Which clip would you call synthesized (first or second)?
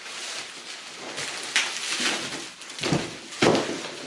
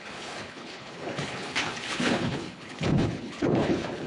second